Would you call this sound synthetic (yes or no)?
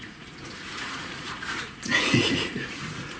yes